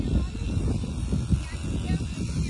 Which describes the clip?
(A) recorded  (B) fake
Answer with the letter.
A